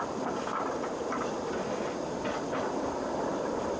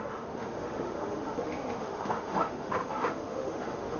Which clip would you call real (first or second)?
first